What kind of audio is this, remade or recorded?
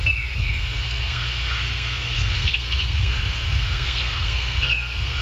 remade